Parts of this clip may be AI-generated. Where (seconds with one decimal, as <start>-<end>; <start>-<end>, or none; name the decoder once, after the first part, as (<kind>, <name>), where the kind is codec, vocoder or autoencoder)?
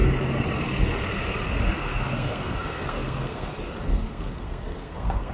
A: 1.8-3.5 (codec, SNAC); 3.9-5.3